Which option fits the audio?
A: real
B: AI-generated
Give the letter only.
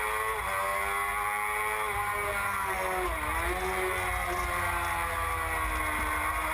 A